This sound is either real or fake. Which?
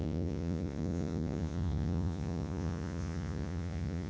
fake